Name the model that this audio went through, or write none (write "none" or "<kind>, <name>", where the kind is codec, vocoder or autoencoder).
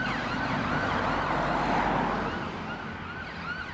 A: none